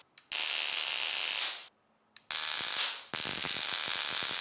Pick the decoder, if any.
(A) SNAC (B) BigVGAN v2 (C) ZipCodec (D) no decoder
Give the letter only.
D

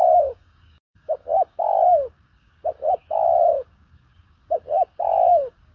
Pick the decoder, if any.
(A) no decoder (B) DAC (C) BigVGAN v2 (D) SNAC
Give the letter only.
B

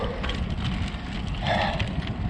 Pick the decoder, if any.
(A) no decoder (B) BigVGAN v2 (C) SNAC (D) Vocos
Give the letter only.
A